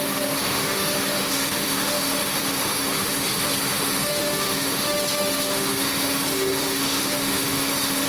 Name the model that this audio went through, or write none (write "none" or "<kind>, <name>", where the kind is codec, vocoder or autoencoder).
autoencoder, DAC-VAE